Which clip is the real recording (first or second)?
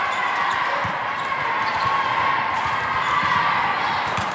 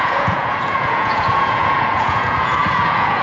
first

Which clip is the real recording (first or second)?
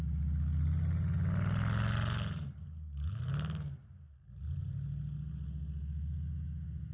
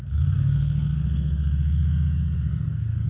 first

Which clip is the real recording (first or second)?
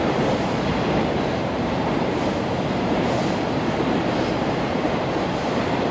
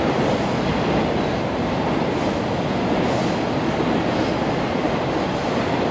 second